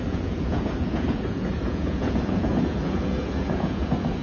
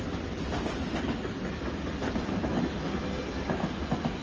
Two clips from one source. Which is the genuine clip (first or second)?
second